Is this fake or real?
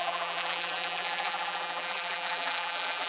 fake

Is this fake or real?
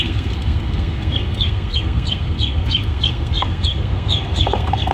fake